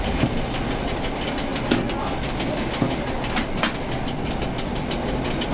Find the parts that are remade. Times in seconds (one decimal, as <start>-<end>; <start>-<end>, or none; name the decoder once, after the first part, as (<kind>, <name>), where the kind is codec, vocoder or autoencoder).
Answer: none

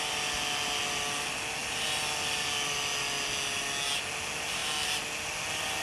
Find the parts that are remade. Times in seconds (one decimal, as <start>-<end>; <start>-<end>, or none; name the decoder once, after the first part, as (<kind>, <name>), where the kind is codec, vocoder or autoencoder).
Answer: none

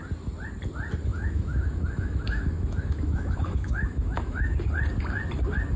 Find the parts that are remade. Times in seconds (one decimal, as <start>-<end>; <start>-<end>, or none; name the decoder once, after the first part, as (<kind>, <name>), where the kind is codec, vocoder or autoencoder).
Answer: 1.1-4.6 (autoencoder, DAC-VAE)

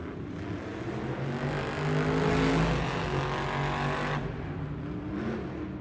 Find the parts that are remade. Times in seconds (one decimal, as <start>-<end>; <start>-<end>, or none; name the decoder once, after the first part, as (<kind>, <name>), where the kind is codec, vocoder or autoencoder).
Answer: none

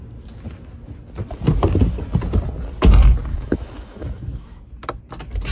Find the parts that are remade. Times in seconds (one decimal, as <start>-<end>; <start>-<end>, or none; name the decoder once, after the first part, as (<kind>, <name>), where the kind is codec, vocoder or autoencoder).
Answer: 3.3-4.6 (autoencoder, DAC-VAE)

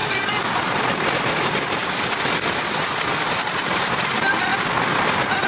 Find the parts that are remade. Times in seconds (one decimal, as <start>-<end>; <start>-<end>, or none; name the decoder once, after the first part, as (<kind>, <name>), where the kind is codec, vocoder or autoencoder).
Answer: none

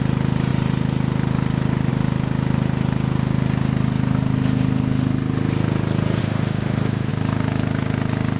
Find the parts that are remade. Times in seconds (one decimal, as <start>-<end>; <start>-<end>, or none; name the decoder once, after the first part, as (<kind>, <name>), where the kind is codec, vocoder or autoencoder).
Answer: 6.2-7.1 (autoencoder, DAC-VAE)

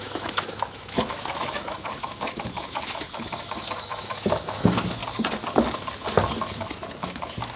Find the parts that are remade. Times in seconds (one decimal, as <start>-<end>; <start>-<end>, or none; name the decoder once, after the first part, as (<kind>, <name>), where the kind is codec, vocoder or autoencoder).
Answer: 0.0-5.0 (autoencoder, DAC-VAE); 6.4-7.6